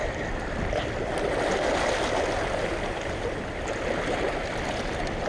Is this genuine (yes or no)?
yes